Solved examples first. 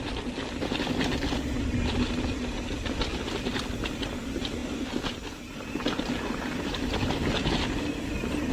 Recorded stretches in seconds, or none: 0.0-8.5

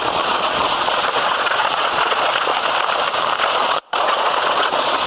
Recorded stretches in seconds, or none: 2.5-3.4

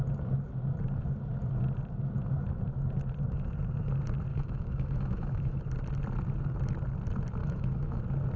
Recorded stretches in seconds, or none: 0.0-4.3; 5.6-7.4; 8.0-8.4

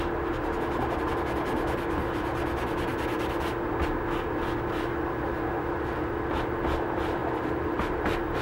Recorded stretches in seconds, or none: 2.9-5.7

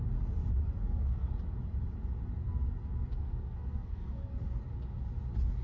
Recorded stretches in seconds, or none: 0.0-0.8; 1.3-3.1; 4.3-5.6

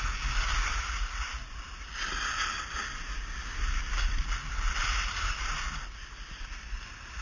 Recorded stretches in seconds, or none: 0.0-7.2

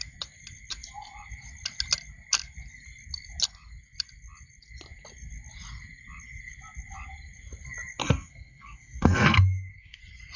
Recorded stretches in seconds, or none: 0.0-8.0; 10.0-10.4